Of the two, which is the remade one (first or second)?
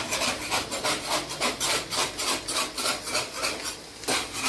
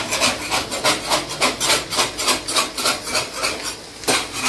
first